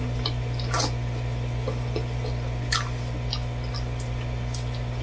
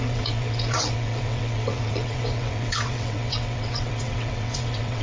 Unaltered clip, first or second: first